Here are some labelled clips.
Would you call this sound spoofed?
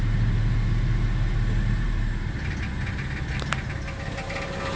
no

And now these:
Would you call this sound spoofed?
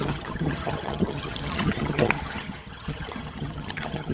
yes